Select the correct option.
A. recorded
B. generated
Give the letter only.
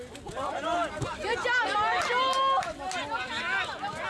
A